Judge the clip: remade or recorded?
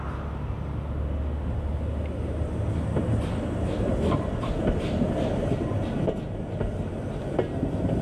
recorded